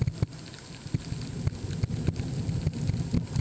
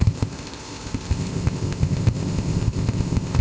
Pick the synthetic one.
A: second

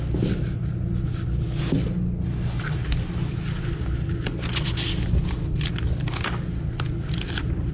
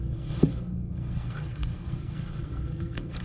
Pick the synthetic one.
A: second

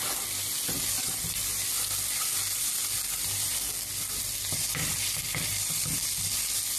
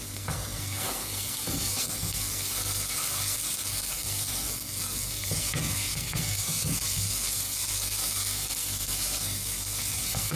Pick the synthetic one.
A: second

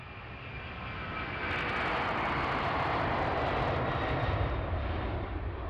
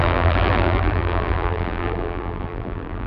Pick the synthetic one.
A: second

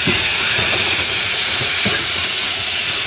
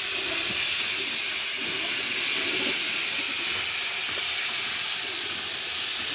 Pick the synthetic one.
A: first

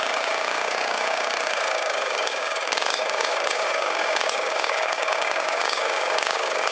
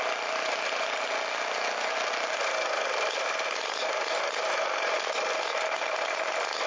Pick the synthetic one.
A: first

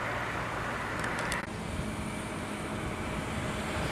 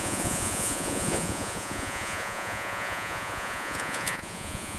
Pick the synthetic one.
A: second